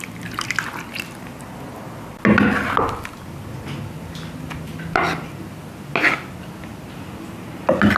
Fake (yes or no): no